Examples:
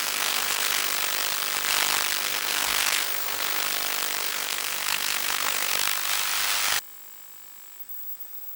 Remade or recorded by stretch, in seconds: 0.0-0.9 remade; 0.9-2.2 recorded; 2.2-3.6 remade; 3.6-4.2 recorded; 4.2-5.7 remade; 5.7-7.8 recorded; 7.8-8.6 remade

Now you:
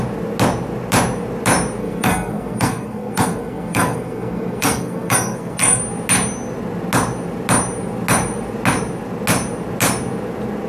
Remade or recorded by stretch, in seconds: 0.0-1.8 recorded; 1.8-5.8 remade; 5.8-10.7 recorded